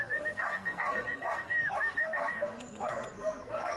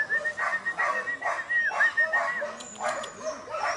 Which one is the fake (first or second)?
first